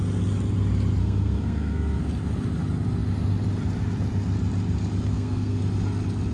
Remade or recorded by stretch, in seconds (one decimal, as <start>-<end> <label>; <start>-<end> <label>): 0.0-1.0 recorded; 1.0-2.0 remade; 2.0-5.1 recorded; 5.1-5.6 remade; 5.6-6.3 recorded